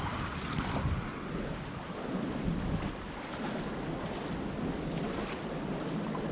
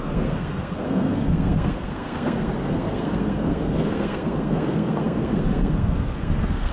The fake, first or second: second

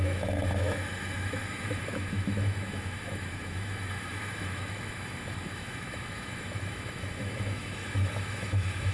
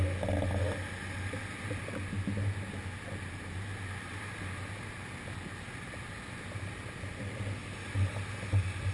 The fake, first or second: first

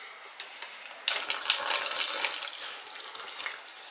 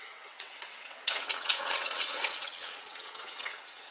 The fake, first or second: second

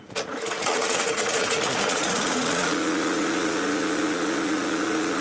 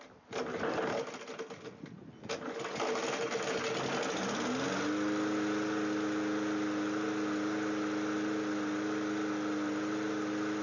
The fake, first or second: first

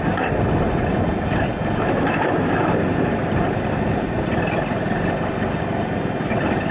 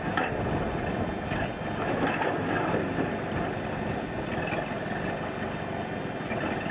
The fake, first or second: first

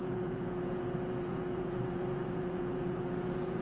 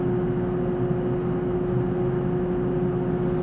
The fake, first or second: first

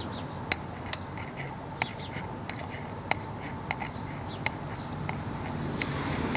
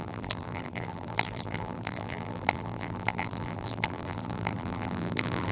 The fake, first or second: second